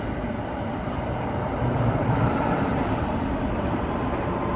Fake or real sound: fake